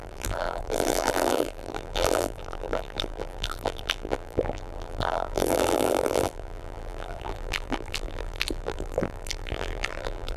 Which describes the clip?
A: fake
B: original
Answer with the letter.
A